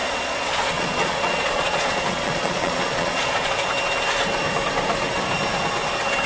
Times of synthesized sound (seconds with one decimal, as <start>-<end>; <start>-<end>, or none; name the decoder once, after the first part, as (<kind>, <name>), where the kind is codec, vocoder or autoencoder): 0.0-3.5 (vocoder, Vocos)